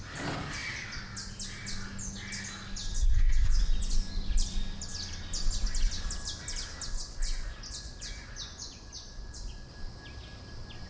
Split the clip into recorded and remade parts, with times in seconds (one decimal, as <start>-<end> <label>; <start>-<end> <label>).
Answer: 0.0-3.0 recorded; 3.0-4.0 remade; 4.0-6.9 recorded; 6.9-9.7 remade; 9.7-10.9 recorded